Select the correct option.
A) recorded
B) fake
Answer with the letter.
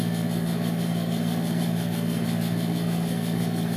B